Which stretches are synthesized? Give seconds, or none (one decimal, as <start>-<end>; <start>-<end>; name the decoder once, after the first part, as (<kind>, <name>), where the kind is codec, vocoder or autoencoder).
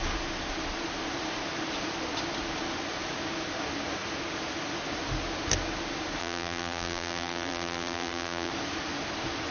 6.2-8.5 (vocoder, BigVGAN v2)